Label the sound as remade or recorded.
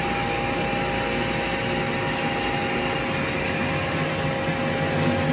recorded